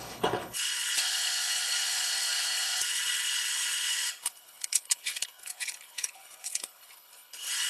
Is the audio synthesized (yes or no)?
yes